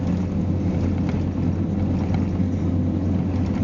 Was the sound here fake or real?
real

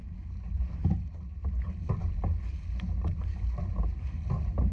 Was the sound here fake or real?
real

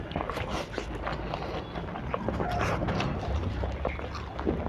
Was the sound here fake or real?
real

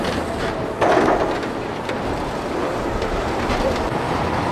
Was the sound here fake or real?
fake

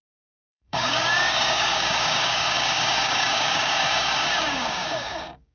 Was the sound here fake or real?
fake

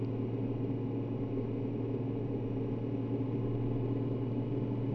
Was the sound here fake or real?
real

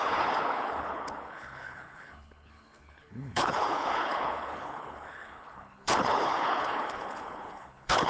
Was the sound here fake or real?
fake